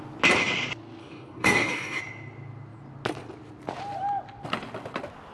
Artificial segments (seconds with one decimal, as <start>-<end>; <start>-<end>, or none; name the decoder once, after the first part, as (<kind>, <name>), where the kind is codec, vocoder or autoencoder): 1.0-2.0 (codec, DAC)